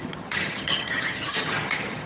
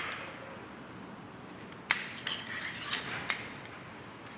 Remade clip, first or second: first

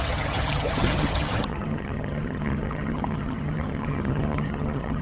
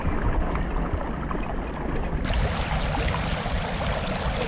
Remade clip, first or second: first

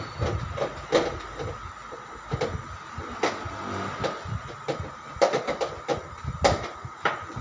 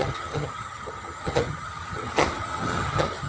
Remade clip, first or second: second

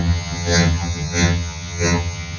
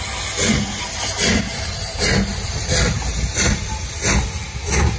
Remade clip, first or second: first